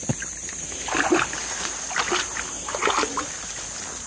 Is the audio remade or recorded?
recorded